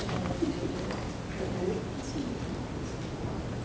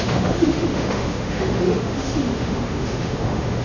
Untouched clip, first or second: first